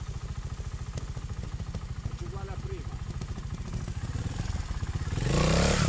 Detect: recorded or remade recorded